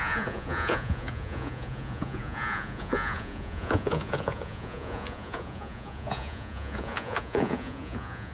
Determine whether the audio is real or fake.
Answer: fake